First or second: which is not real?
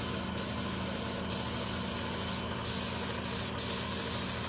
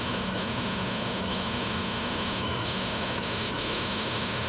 second